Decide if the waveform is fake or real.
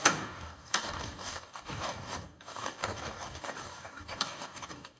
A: fake